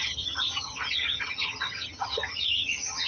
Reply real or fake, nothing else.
fake